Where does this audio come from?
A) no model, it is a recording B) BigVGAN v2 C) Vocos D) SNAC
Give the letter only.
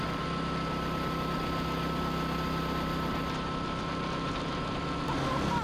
A